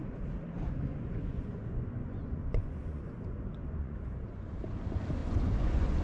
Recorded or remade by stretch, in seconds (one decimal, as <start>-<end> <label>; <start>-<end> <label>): 0.0-0.9 recorded; 0.9-4.5 remade; 4.5-5.2 recorded; 5.2-6.0 remade